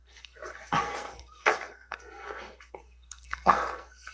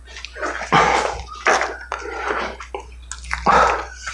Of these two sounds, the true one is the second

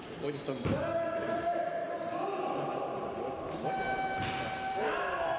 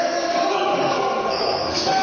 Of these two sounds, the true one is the first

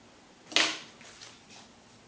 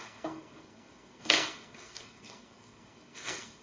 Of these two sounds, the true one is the first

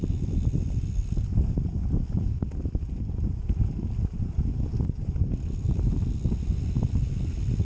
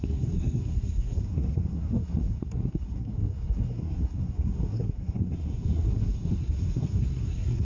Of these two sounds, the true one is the first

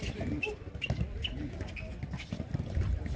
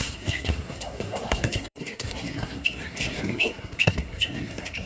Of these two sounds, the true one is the first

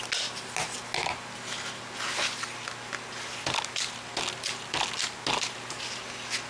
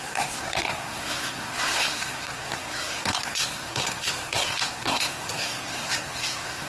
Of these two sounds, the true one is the first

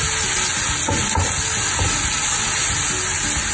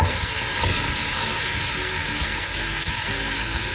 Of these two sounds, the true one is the first